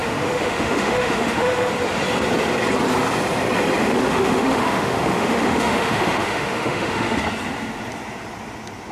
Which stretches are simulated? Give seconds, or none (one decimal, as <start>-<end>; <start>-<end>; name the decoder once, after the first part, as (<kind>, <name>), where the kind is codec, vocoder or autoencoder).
0.0-1.7 (autoencoder, DAC-VAE); 3.8-7.2